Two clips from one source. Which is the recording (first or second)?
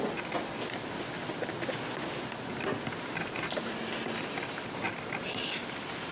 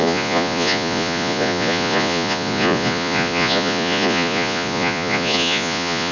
first